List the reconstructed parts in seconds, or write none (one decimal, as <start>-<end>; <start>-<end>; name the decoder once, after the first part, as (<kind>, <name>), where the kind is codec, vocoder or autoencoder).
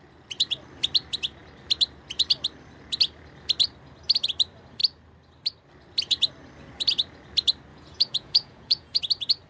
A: 7.7-9.0 (vocoder, Vocos)